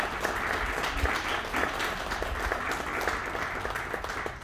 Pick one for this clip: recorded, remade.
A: recorded